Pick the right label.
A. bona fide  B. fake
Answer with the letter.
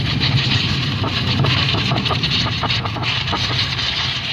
B